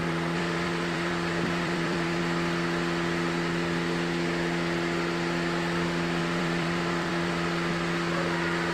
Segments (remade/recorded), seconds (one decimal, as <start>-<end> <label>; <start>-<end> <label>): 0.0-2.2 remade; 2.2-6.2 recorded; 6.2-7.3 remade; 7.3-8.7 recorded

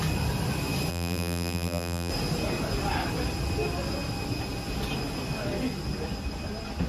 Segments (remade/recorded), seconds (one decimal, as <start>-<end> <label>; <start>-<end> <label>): 0.0-0.9 recorded; 0.9-2.1 remade; 2.1-6.9 recorded

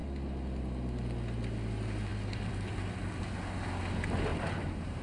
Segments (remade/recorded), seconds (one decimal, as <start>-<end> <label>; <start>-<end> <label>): 0.0-4.3 recorded; 4.3-5.0 remade

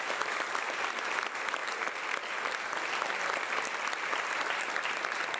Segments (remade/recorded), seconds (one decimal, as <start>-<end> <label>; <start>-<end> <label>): 0.0-1.6 remade; 1.6-4.1 recorded; 4.1-5.4 remade

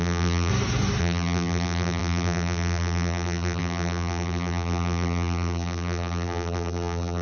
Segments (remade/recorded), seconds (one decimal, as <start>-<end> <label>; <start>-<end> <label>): 0.0-0.5 remade; 0.5-1.0 recorded; 1.0-7.2 remade

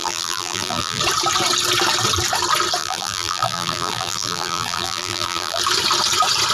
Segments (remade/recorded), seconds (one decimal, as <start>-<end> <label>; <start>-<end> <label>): 0.0-1.0 remade; 1.0-2.8 recorded; 2.8-5.6 remade; 5.6-6.5 recorded

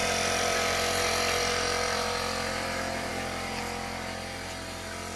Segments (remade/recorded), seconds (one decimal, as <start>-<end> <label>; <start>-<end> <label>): 0.0-3.1 remade; 3.1-5.2 recorded